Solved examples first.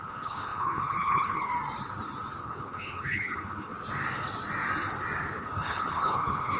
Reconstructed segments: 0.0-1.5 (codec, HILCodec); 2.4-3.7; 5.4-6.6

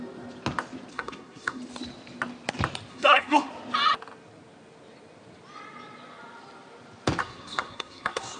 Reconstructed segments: 0.9-1.6 (codec, SNAC); 2.9-3.5; 7.2-8.4

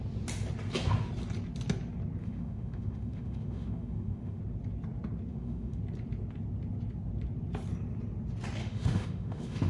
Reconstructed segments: 2.2-4.4 (autoencoder, DAC-VAE); 5.3-5.8; 8.6-9.7

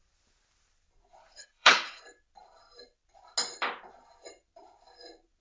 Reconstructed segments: 1.2-2.0 (codec, HILCodec)

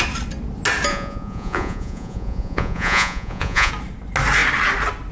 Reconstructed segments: 0.9-3.7 (vocoder, Vocos)

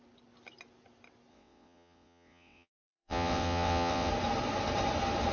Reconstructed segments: 1.3-4.1 (vocoder, WaveNeXt)

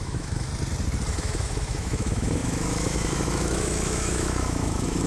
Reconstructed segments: 0.0-0.5 (autoencoder, DAC-VAE); 1.1-5.1

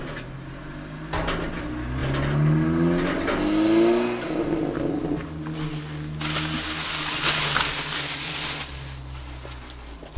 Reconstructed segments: none